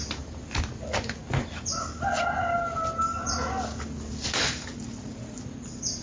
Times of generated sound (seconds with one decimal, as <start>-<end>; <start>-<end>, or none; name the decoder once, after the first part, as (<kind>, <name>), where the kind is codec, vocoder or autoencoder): none